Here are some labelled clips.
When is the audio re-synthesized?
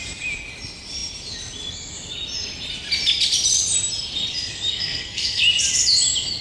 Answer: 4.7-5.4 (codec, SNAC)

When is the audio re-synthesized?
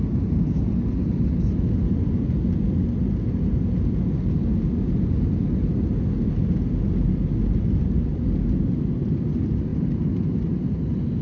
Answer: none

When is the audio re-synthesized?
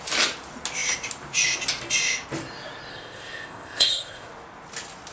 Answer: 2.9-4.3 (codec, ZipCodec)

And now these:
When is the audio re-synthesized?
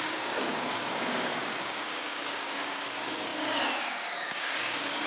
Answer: 0.0-5.1 (codec, DAC)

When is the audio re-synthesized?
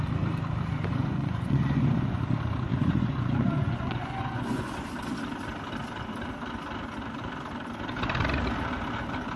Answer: 0.9-2.2 (vocoder, Vocos); 2.7-4.7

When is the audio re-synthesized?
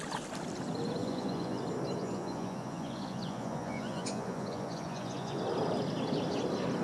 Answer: 1.0-1.6 (vocoder, Vocos); 2.0-5.4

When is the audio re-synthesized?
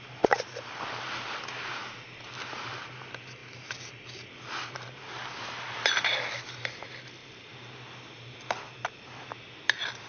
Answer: 7.2-7.7 (vocoder, BigVGAN v2)